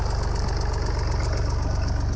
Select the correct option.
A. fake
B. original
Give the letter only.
B